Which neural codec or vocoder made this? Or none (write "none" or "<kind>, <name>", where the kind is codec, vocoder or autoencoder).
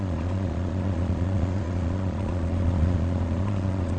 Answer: vocoder, Vocos